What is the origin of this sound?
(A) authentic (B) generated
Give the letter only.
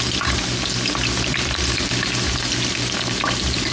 A